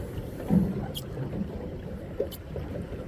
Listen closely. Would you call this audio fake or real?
fake